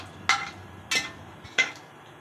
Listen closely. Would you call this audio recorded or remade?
recorded